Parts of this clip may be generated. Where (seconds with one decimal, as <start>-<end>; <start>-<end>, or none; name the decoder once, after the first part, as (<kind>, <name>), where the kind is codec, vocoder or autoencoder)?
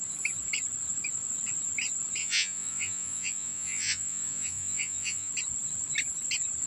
2.2-5.3 (vocoder, Vocos)